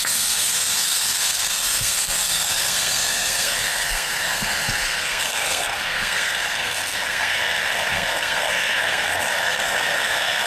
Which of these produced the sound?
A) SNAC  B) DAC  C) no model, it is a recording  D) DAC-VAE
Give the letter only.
A